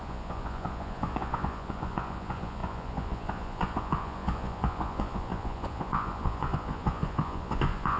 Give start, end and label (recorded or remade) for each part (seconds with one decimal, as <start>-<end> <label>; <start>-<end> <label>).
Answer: 0.0-8.0 remade